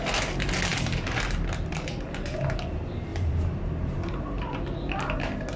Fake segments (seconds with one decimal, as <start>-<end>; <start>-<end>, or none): 0.7-2.0; 3.1-4.9